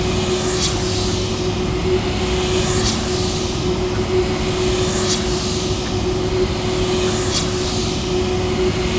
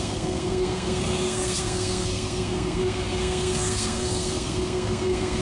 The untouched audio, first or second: first